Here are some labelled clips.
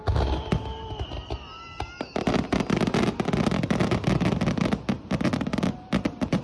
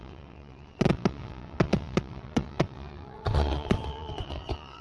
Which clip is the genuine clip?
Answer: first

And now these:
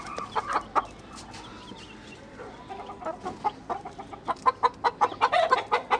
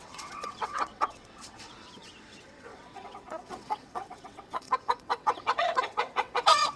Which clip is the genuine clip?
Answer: first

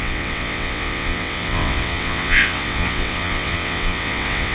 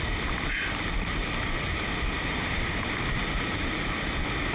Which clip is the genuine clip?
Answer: second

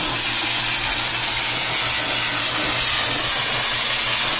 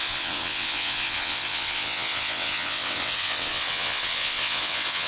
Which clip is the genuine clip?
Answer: first